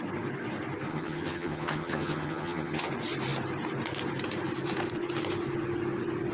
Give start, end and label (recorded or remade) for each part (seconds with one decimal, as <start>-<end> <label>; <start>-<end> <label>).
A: 0.0-0.9 recorded; 0.9-2.9 remade; 2.9-6.3 recorded